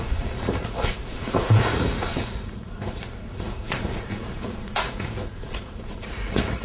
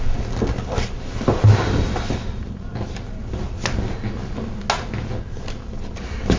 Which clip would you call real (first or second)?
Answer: second